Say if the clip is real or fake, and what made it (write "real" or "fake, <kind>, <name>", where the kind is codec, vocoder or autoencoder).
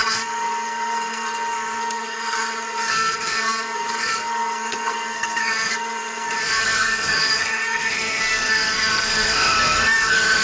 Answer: fake, codec, SNAC